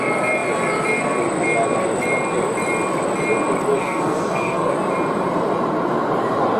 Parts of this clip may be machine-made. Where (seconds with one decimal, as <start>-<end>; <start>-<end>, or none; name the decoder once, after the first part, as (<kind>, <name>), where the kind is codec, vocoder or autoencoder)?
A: 3.7-4.7 (codec, SNAC)